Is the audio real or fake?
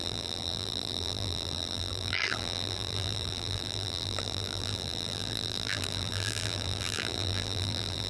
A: fake